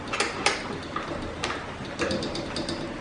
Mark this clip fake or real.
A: real